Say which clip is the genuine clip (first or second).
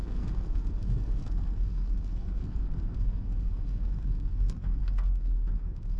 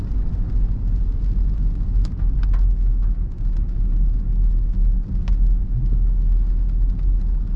second